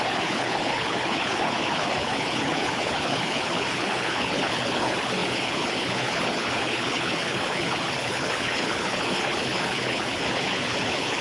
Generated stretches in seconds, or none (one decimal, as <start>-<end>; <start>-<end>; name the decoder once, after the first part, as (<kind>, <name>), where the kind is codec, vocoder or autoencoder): 0.0-11.2 (codec, HILCodec)